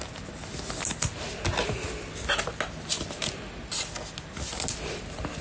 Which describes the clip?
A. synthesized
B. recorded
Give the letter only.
B